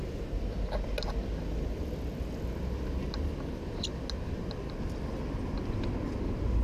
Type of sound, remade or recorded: recorded